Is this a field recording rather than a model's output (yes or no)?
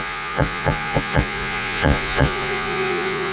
no